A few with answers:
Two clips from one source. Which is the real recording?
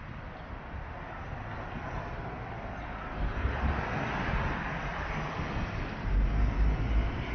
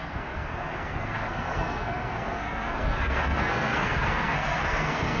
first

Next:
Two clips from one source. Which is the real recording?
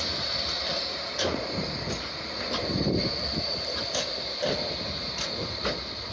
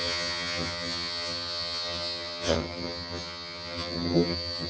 first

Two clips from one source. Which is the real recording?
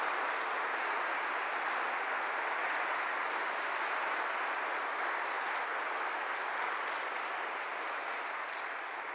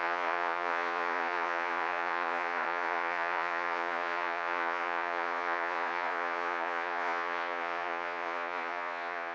first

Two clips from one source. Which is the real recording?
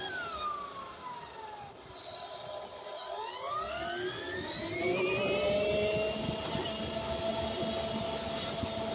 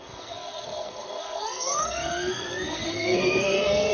first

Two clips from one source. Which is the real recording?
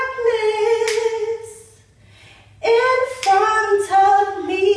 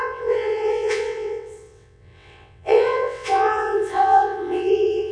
first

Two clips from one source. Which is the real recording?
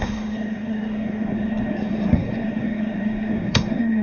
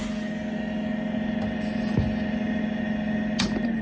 second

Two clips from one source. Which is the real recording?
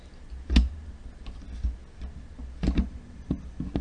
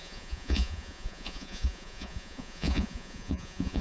first